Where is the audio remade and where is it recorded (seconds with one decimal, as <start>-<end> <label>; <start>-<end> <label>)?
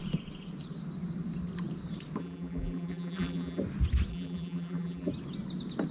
0.0-2.2 recorded; 2.2-3.6 remade; 3.6-4.1 recorded; 4.1-5.1 remade; 5.1-5.9 recorded